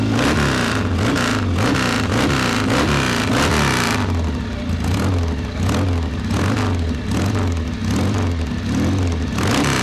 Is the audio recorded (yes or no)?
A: yes